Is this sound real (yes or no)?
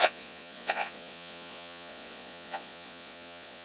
no